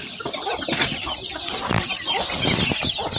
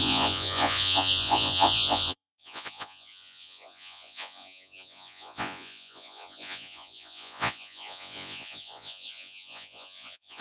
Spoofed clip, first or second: second